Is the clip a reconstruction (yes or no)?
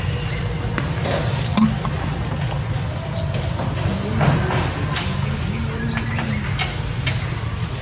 no